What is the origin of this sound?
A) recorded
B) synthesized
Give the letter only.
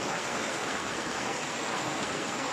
B